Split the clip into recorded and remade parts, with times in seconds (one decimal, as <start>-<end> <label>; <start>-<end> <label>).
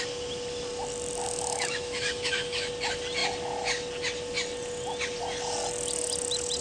0.0-1.2 recorded; 1.2-2.7 remade; 2.7-6.6 recorded